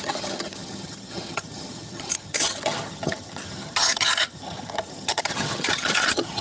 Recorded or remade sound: remade